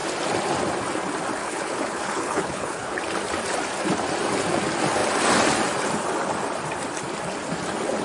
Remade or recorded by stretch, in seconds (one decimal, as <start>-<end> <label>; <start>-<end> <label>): 0.0-1.4 recorded; 1.4-3.0 remade; 3.0-8.0 recorded